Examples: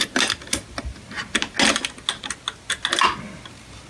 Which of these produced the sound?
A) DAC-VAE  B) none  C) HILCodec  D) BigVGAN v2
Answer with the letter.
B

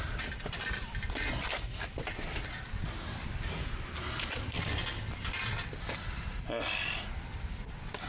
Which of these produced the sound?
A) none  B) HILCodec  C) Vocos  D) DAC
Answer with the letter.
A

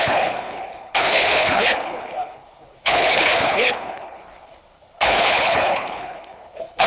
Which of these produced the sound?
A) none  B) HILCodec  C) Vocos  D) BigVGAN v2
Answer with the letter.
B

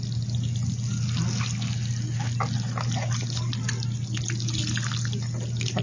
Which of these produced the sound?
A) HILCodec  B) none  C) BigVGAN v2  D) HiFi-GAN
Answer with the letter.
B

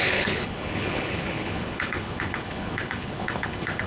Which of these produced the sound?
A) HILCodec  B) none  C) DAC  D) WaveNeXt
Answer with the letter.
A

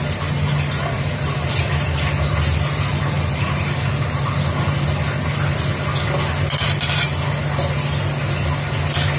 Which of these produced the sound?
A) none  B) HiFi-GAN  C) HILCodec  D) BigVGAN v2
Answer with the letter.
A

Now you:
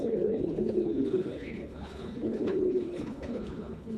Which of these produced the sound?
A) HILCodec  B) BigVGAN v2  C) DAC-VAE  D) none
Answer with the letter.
A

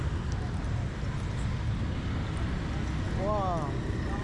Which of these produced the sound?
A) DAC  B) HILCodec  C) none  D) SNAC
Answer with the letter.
C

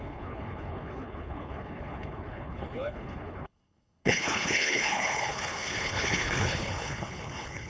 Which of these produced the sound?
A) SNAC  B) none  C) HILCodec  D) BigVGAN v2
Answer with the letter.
C